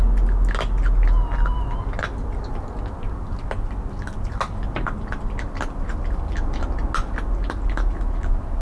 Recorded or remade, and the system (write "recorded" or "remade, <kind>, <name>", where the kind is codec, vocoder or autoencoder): recorded